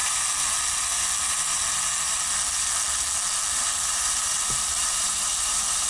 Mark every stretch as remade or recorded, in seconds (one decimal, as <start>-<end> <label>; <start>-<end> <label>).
0.0-3.5 recorded; 3.5-5.9 remade